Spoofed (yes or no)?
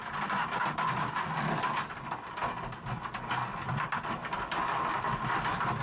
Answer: no